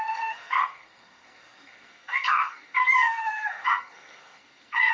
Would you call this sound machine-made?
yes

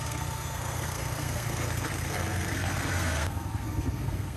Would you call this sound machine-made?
yes